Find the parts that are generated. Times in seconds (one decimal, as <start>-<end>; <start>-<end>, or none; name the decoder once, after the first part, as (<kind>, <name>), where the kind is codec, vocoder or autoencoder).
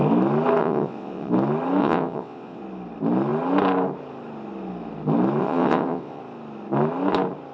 0.6-1.3 (vocoder, WaveNeXt); 1.8-2.6; 5.4-6.2